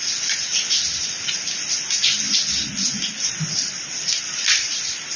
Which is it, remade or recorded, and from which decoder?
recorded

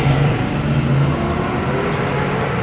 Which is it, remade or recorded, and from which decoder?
recorded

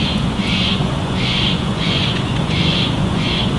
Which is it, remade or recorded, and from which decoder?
remade, vocoder, Vocos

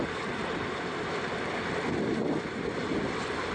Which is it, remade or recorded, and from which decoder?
recorded